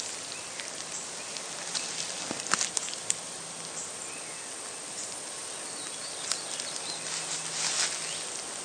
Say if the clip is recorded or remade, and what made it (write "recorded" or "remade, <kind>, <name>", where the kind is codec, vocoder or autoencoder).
recorded